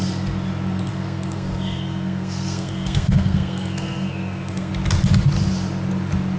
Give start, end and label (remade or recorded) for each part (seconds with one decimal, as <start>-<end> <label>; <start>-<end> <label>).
0.0-0.9 recorded; 0.9-4.7 remade; 4.7-6.4 recorded